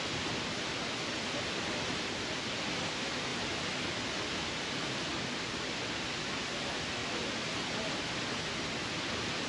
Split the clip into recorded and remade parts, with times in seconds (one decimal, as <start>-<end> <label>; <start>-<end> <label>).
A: 0.0-3.3 recorded; 3.3-3.9 remade; 3.9-5.1 recorded; 5.1-6.0 remade; 6.0-9.5 recorded